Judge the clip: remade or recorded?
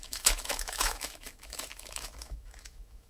remade